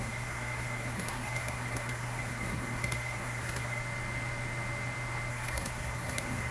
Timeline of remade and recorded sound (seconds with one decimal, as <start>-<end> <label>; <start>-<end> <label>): 0.0-3.8 remade; 3.8-5.3 recorded; 5.3-6.5 remade